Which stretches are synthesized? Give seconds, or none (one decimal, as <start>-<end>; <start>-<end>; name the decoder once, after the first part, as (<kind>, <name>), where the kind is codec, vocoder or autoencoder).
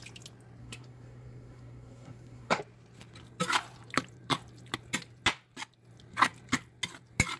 0.6-2.6 (codec, SNAC)